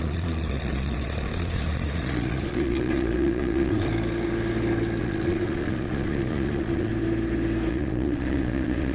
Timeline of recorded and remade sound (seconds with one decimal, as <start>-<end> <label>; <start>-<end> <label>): 0.0-3.9 remade; 3.9-5.0 recorded; 5.0-6.9 remade; 6.9-7.7 recorded; 7.7-8.9 remade